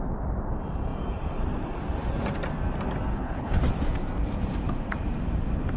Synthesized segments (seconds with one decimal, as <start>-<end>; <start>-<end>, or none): 3.1-3.6